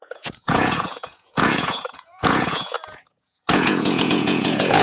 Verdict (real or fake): fake